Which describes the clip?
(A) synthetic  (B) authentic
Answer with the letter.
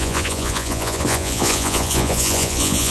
A